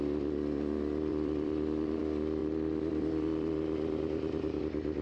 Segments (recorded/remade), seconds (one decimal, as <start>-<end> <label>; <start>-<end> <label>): 0.0-1.1 recorded; 1.1-2.0 remade; 2.0-2.4 recorded; 2.4-4.6 remade; 4.6-5.0 recorded